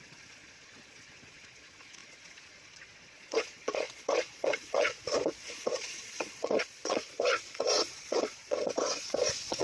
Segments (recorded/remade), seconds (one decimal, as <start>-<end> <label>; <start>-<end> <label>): 0.0-9.6 remade